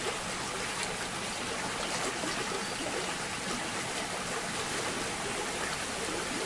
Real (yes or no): yes